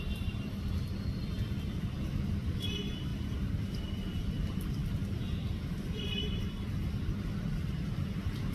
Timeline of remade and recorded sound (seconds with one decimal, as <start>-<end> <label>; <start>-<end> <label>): 0.0-8.5 remade